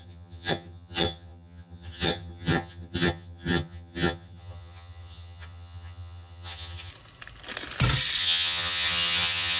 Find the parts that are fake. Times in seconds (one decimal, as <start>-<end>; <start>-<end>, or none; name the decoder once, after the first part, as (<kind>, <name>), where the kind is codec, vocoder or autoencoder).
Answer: 0.0-6.9 (vocoder, HiFi-GAN); 8.2-9.6